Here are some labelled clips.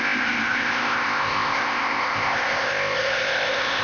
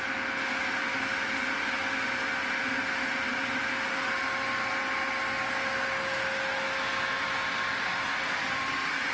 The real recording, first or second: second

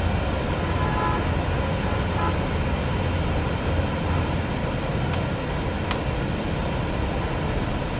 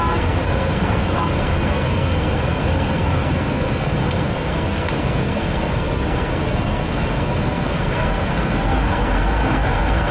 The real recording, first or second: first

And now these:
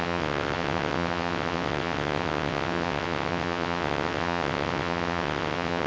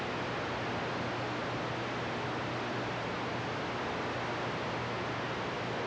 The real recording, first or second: second